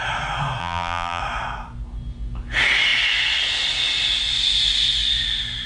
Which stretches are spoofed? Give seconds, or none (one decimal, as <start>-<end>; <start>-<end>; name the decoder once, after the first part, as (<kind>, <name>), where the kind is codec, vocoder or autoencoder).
0.6-1.2 (vocoder, BigVGAN v2)